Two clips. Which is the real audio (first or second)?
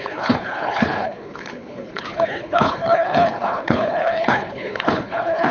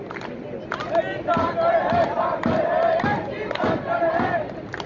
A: second